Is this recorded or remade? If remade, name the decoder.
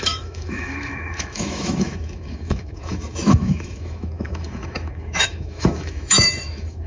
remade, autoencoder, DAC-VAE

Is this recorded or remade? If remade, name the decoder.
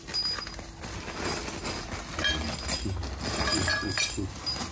recorded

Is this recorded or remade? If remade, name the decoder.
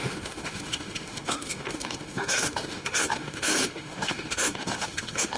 remade, autoencoder, DAC-VAE